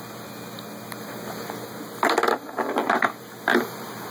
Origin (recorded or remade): recorded